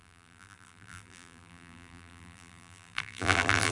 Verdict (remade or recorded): remade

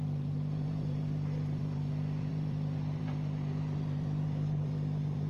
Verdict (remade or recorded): remade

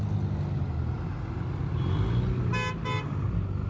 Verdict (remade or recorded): recorded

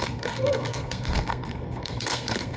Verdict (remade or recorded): remade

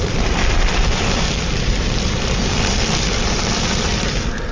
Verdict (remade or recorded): remade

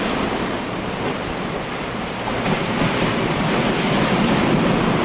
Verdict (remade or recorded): recorded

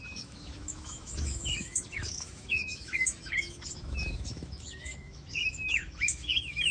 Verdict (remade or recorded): remade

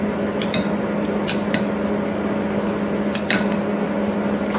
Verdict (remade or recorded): recorded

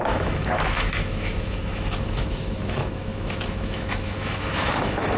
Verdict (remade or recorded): remade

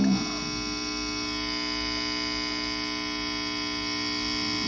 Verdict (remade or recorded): recorded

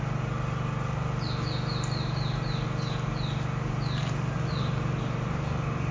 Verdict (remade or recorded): recorded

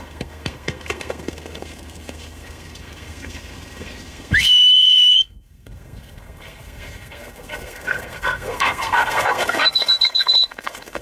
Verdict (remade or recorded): remade